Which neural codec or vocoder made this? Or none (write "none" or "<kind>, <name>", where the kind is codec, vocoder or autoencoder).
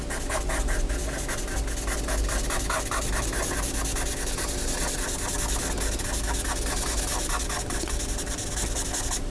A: none